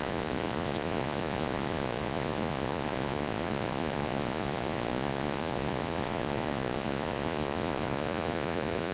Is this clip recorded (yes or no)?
no